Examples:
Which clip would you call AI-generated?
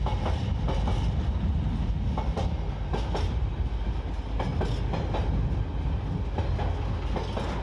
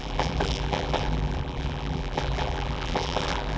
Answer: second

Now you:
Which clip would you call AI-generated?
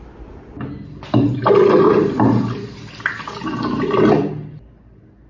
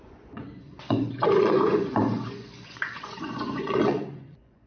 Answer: second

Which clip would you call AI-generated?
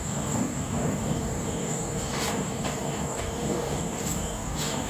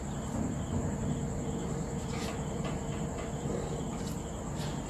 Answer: first